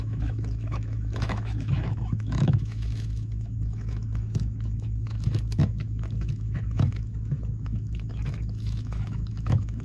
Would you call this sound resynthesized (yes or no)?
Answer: yes